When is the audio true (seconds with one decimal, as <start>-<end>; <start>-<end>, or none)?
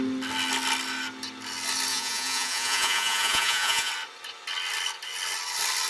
0.0-1.9; 3.9-5.9